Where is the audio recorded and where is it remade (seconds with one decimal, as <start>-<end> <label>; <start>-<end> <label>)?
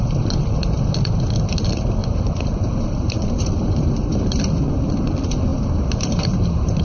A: 0.0-2.0 recorded; 2.0-4.4 remade; 4.4-5.5 recorded; 5.5-6.8 remade